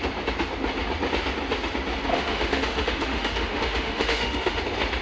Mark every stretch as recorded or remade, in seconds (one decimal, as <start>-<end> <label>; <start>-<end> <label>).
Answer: 0.0-2.1 recorded; 2.1-4.6 remade; 4.6-5.0 recorded